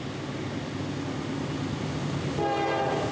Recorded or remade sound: recorded